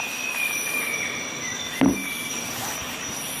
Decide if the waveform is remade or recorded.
recorded